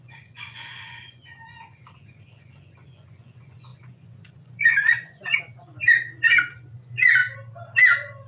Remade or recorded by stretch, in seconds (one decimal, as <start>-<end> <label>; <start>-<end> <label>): 0.0-7.2 remade; 7.2-8.3 recorded